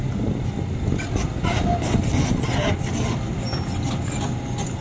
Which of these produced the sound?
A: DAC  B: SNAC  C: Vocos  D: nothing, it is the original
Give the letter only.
D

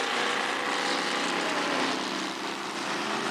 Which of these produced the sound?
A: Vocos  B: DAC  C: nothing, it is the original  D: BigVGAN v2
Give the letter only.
C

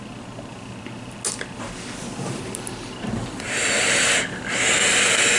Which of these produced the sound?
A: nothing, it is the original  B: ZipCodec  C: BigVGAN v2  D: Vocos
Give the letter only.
A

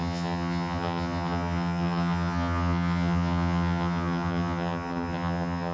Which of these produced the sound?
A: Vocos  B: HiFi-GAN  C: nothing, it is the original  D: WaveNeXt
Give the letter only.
B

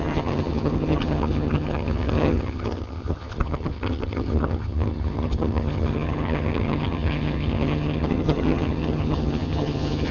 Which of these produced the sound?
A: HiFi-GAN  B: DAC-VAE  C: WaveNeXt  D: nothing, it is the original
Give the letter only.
A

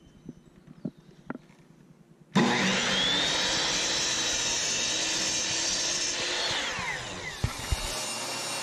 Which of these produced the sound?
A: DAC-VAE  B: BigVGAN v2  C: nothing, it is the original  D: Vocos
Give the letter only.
C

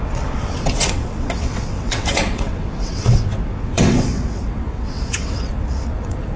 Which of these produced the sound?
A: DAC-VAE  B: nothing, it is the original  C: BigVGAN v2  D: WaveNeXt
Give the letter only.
D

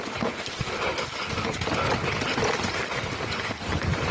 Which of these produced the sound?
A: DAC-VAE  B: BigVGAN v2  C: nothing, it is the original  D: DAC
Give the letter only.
C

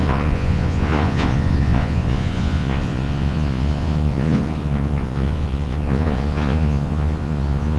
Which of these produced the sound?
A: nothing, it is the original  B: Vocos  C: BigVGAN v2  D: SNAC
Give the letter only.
B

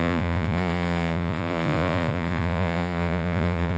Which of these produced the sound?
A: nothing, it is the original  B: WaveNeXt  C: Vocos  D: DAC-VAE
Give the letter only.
C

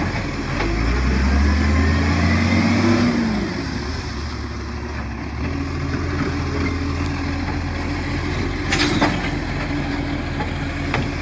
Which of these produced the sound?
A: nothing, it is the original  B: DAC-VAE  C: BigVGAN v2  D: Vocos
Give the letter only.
A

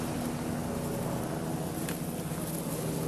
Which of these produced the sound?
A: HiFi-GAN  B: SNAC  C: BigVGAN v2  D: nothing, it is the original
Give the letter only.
D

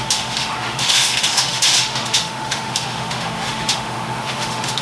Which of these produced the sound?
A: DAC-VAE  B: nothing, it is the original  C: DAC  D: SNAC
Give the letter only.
A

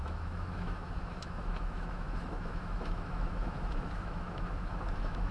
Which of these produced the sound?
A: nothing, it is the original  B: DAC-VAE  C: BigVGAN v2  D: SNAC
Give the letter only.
B